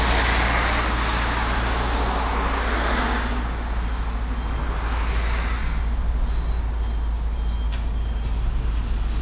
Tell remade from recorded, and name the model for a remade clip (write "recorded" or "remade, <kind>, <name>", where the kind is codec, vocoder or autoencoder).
recorded